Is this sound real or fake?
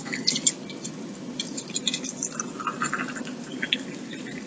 real